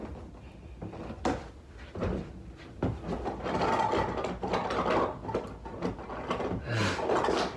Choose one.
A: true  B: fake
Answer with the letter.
A